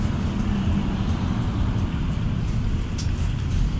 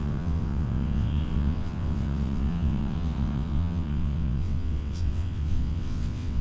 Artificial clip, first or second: second